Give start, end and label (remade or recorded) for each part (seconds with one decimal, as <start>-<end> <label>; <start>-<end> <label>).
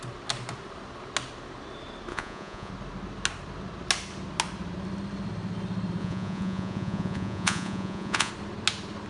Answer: 0.0-2.1 recorded; 2.1-2.7 remade; 2.7-6.0 recorded; 6.0-8.3 remade; 8.3-9.1 recorded